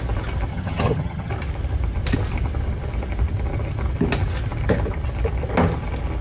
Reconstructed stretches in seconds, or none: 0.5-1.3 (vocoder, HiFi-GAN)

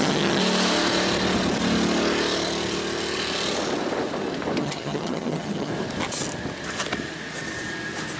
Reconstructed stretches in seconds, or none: 0.0-0.4 (vocoder, HiFi-GAN); 4.6-5.7

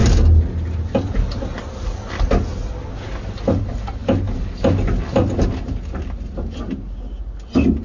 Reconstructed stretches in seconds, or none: none

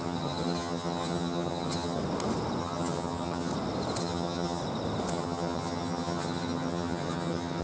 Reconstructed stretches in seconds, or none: 0.0-2.0 (vocoder, HiFi-GAN); 2.6-3.5; 4.0-4.6; 5.1-7.6

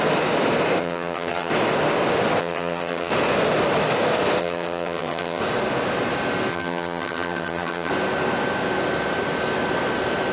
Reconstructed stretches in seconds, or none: 0.8-1.5 (vocoder, HiFi-GAN); 2.4-3.1; 4.4-5.4; 6.5-7.9

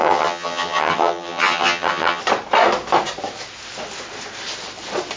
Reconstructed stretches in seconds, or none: 0.0-2.2 (vocoder, HiFi-GAN)

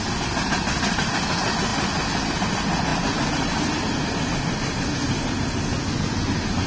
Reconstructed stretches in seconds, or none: none